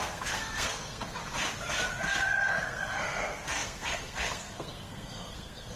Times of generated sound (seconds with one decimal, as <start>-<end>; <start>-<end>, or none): 0.0-1.2; 2.5-5.8